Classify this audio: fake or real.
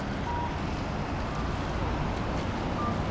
real